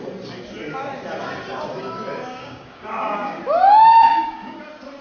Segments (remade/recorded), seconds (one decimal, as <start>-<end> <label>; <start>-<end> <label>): 0.0-2.4 recorded; 2.4-3.4 remade; 3.4-3.9 recorded; 3.9-4.6 remade; 4.6-5.0 recorded